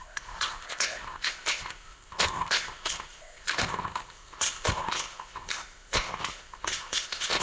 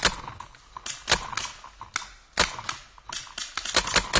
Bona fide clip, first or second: second